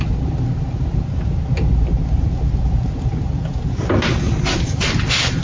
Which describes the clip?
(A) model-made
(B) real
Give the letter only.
B